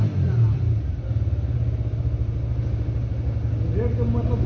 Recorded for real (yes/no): yes